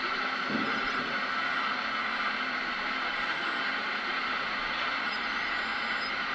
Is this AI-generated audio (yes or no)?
yes